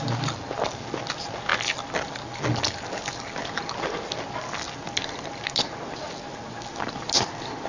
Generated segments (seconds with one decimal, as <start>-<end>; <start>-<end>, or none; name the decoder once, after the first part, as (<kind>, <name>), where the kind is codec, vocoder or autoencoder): none